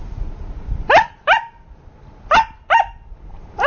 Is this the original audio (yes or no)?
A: yes